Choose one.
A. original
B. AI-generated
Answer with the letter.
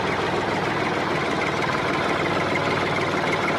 A